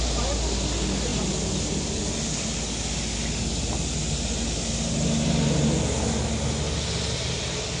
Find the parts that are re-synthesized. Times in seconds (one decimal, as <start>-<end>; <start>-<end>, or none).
none